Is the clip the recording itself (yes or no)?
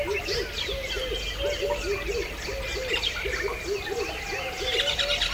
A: yes